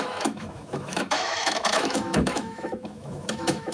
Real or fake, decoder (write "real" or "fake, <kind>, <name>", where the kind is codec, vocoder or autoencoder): fake, autoencoder, DAC-VAE